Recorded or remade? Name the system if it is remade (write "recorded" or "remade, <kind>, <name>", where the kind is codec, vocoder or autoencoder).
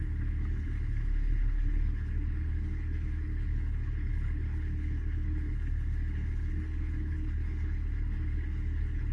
remade, codec, HILCodec